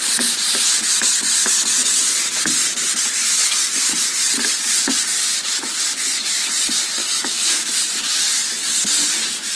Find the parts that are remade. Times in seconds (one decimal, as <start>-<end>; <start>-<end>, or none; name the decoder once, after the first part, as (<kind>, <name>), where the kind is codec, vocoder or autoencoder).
7.0-7.8 (autoencoder, DAC-VAE)